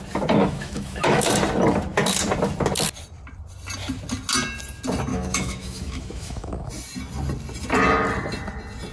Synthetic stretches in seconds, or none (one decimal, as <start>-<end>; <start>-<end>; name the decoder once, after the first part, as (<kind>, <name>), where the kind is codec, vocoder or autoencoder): 0.4-1.3 (autoencoder, DAC-VAE); 5.1-6.7